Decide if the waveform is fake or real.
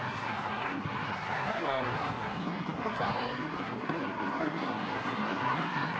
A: fake